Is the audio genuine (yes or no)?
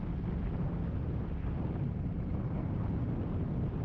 yes